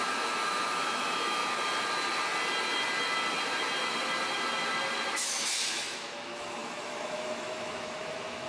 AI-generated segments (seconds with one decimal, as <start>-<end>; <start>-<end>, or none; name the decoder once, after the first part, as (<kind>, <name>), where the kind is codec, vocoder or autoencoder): 0.0-1.4 (autoencoder, DAC-VAE); 5.1-8.5